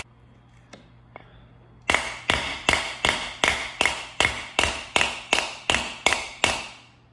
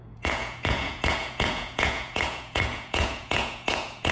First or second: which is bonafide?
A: first